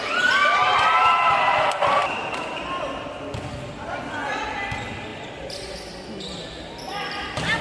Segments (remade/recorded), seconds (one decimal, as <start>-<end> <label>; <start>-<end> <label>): 0.0-2.0 recorded; 2.0-2.7 remade; 2.7-5.1 recorded; 5.1-6.0 remade; 6.0-7.6 recorded